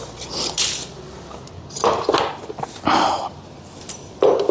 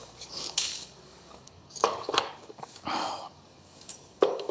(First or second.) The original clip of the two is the first